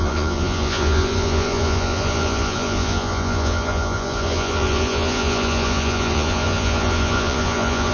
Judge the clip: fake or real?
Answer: fake